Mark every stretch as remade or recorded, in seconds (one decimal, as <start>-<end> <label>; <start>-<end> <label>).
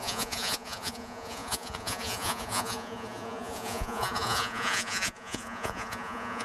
0.0-6.4 remade